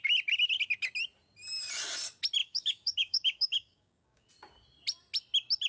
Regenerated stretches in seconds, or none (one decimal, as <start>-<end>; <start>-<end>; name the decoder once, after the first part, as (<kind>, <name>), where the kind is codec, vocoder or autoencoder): 2.4-4.3 (codec, DAC)